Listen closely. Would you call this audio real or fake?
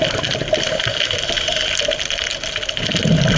real